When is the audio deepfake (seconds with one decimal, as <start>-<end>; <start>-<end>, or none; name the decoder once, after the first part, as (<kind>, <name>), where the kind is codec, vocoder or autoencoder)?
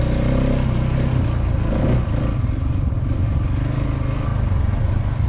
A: none